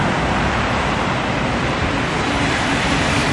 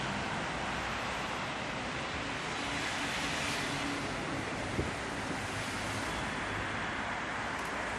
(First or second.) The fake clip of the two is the first